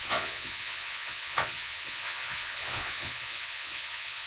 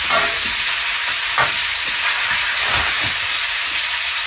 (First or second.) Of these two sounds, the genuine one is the second